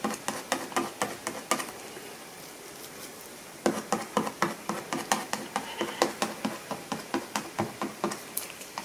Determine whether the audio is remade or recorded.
recorded